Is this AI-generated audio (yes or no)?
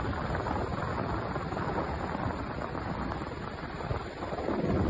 no